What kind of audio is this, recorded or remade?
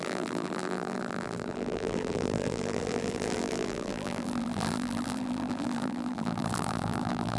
remade